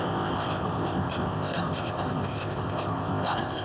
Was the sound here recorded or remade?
remade